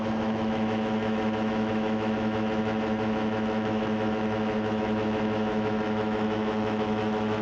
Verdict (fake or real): fake